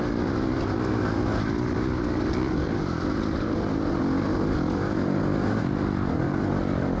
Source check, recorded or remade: recorded